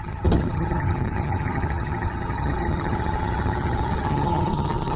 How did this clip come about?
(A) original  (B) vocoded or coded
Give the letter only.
B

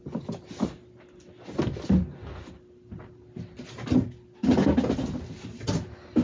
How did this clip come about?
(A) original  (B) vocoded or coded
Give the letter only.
A